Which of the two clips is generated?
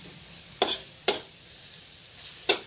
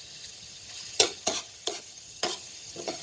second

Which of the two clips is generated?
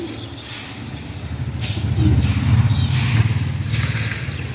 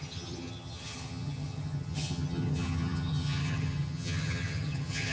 second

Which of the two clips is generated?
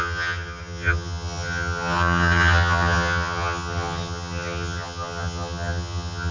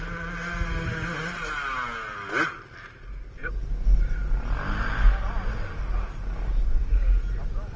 first